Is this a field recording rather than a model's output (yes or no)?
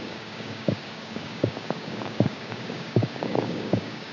no